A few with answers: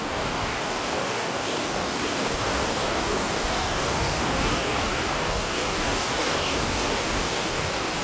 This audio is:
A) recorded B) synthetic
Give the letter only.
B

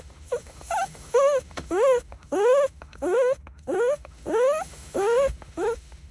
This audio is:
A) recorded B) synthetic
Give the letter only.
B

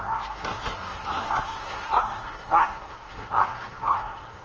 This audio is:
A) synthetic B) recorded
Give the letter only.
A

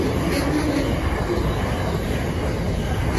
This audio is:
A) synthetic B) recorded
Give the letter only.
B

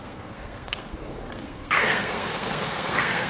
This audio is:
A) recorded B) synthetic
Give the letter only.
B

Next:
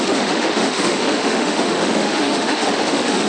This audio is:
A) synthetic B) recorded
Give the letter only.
A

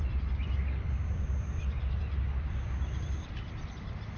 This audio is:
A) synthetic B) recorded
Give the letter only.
A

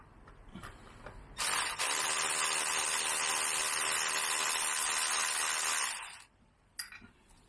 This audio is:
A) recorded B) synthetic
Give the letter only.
A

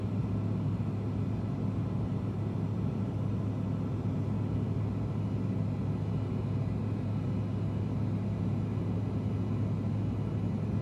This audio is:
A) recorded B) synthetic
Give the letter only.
A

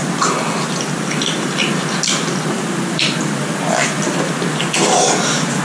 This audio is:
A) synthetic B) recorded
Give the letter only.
B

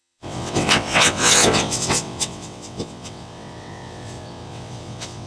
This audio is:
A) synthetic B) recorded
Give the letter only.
A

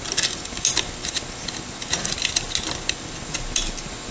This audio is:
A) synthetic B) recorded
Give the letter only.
B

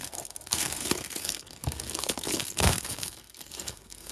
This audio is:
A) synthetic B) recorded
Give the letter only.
A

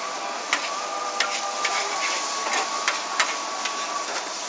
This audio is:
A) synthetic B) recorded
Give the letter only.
B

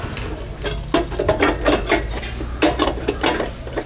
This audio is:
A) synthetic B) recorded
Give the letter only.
B